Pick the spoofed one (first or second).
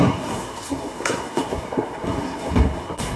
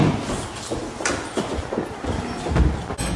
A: first